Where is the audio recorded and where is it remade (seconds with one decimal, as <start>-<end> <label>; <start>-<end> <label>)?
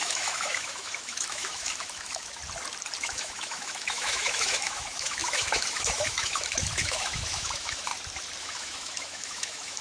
0.0-2.4 remade; 2.4-3.0 recorded; 3.0-7.9 remade; 7.9-8.4 recorded; 8.4-9.8 remade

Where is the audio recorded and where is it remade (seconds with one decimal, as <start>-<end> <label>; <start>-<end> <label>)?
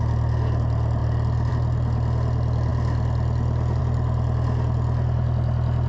0.0-5.9 recorded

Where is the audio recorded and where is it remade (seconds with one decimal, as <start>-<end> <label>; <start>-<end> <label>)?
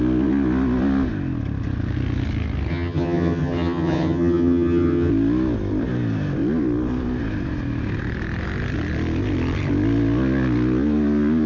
0.0-2.7 recorded; 2.7-5.1 remade; 5.1-11.5 recorded